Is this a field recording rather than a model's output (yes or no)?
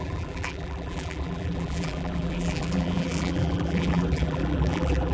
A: no